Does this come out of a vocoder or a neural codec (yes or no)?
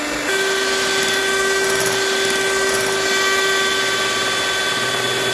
no